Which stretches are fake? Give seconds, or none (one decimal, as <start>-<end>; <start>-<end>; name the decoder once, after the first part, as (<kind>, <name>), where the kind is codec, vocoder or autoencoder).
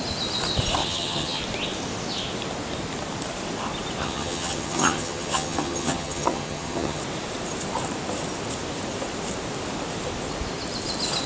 0.8-1.4 (vocoder, HiFi-GAN); 4.0-7.0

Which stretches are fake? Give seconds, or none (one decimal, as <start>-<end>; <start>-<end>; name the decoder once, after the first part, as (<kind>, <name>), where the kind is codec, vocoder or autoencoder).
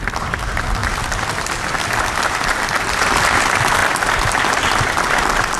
0.8-3.2 (vocoder, BigVGAN v2)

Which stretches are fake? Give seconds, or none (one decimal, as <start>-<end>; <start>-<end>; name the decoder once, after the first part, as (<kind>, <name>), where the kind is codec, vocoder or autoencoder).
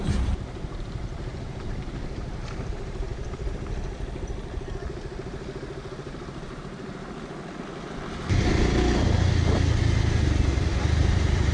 0.0-3.1 (vocoder, BigVGAN v2); 5.9-6.9; 11.0-11.5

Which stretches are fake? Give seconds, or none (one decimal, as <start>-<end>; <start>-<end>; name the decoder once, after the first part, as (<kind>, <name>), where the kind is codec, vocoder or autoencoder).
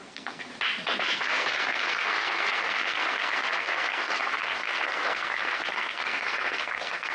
0.0-0.5 (codec, SNAC); 1.0-7.1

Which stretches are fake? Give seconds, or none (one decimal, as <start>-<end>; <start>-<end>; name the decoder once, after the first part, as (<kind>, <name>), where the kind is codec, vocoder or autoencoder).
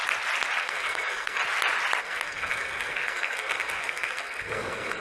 0.6-1.4 (codec, SNAC); 2.0-5.0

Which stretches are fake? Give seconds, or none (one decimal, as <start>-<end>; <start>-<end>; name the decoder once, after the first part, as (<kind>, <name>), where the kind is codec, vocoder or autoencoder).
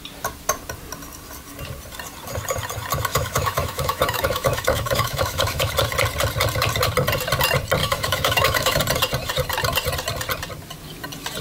3.1-5.7 (autoencoder, DAC-VAE); 7.8-8.8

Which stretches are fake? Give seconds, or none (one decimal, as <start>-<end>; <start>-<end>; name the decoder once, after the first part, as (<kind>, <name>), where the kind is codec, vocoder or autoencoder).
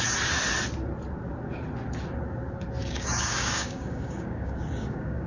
2.8-5.3 (codec, DAC)